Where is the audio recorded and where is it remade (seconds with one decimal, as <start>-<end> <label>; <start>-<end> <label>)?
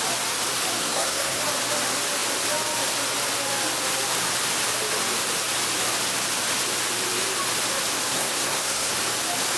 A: 0.0-0.8 recorded; 0.8-1.4 remade; 1.4-8.1 recorded; 8.1-8.9 remade; 8.9-9.6 recorded